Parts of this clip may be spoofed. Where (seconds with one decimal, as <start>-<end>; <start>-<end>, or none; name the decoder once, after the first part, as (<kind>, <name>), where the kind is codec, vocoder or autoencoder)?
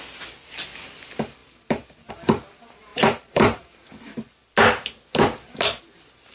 2.9-3.6 (vocoder, BigVGAN v2)